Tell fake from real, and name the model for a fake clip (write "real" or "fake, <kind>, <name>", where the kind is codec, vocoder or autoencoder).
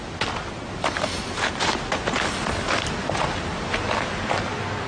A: real